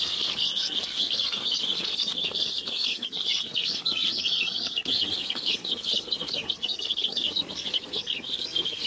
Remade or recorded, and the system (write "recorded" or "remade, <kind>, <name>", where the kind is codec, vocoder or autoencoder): remade, codec, SNAC